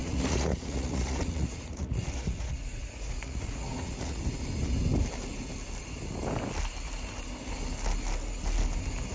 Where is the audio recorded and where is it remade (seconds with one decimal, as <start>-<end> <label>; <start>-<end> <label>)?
0.0-4.2 remade; 4.2-9.1 recorded